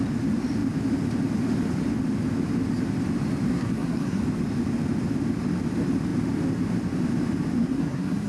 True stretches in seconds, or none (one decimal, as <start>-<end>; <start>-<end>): 0.0-3.5; 4.2-7.6